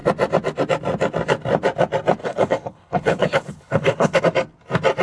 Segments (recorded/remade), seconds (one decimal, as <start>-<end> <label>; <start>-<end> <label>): 0.0-2.2 recorded; 2.2-4.2 remade; 4.2-5.0 recorded